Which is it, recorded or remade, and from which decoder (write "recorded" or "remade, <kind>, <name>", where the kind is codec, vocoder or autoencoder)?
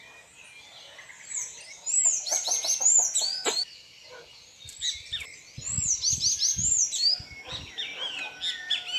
recorded